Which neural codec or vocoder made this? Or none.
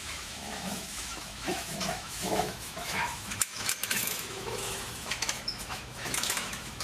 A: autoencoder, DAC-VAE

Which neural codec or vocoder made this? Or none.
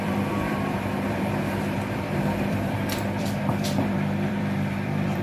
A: vocoder, BigVGAN v2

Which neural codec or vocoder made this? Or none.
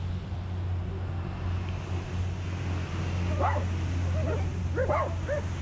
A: none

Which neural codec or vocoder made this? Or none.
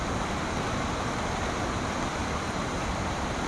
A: none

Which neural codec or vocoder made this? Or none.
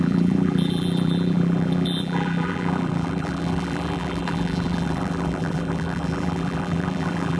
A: vocoder, BigVGAN v2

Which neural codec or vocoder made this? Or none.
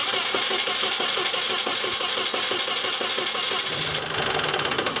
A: none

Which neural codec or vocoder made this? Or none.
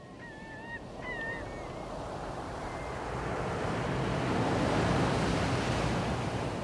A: none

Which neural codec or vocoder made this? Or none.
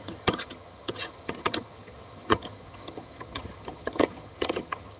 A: vocoder, HiFi-GAN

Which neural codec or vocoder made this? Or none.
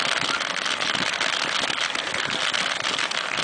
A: none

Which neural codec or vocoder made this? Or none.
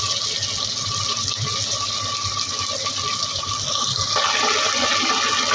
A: none